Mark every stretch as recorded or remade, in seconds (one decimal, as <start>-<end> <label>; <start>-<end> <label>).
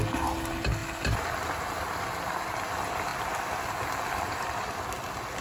0.0-5.4 recorded